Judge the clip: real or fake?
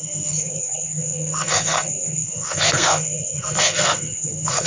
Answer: fake